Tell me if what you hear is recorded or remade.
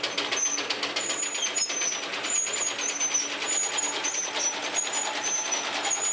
recorded